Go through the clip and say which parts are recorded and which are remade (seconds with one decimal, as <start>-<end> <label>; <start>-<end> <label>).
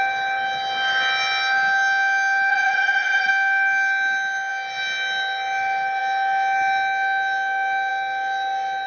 0.0-2.5 recorded; 2.5-3.3 remade; 3.3-8.9 recorded